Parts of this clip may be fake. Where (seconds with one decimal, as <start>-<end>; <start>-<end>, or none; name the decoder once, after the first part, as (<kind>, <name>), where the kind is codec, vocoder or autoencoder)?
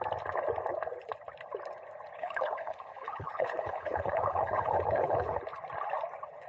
2.2-5.4 (codec, HILCodec)